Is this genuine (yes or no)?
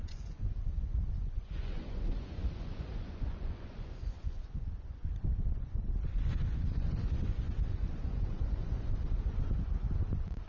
no